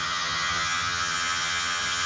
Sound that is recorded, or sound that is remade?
remade